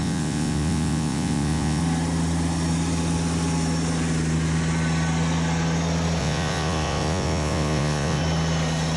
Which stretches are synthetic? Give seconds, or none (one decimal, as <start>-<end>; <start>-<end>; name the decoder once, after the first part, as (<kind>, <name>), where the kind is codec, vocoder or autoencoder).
0.0-1.8 (vocoder, Vocos); 6.2-8.2